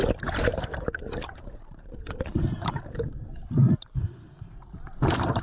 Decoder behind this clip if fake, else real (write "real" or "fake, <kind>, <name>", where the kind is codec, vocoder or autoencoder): fake, vocoder, BigVGAN v2